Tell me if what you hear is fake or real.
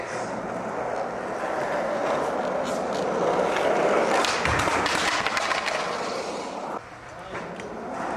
real